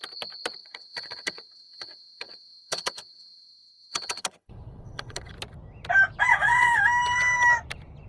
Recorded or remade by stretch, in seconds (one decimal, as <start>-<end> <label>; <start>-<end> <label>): 0.0-0.6 recorded; 0.6-5.3 remade; 5.3-6.3 recorded; 6.3-6.8 remade; 6.8-8.1 recorded